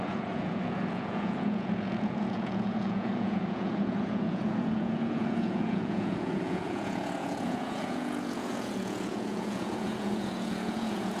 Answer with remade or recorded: remade